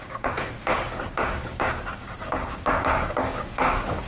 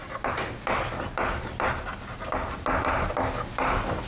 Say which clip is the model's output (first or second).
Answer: first